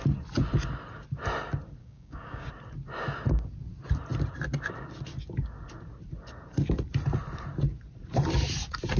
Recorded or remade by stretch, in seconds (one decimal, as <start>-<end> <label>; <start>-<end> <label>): 0.0-1.8 recorded; 1.8-2.5 remade; 2.5-9.0 recorded